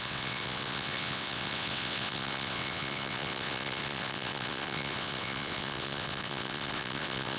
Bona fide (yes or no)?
no